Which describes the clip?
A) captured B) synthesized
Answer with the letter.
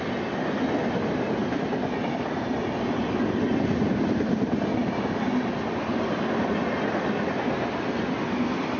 A